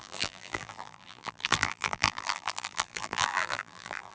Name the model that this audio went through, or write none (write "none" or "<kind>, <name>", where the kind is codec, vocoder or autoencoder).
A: vocoder, BigVGAN v2